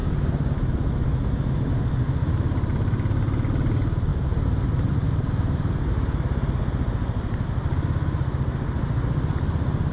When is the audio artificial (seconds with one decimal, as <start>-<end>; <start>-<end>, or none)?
4.1-4.9